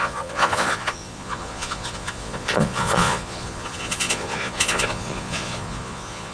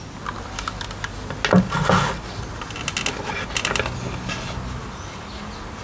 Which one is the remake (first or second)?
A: first